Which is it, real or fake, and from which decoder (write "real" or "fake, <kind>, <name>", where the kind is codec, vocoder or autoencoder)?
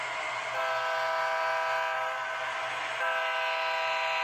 real